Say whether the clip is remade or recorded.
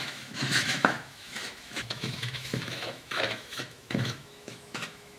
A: remade